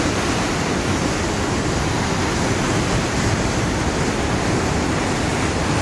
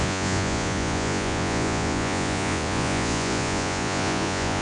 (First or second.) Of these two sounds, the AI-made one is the second